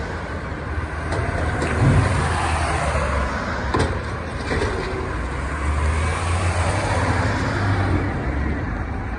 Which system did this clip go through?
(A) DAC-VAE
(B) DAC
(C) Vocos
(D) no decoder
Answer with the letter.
D